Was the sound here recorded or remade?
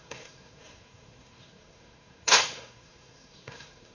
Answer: remade